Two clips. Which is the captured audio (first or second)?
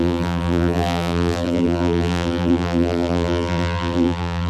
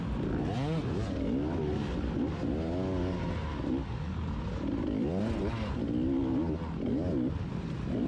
second